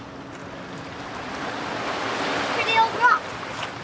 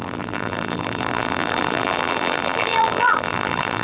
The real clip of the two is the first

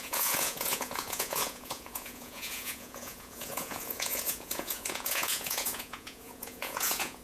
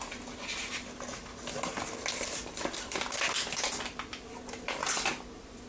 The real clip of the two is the second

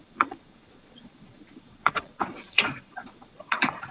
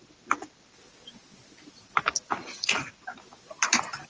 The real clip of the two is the second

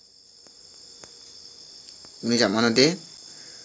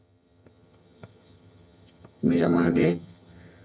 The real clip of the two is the first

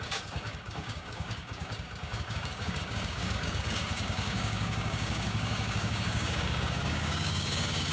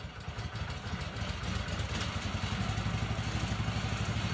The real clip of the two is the second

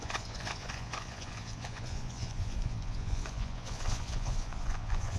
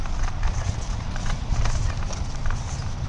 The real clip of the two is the second